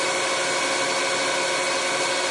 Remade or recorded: recorded